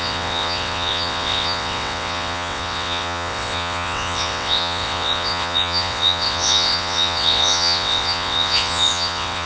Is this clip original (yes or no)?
no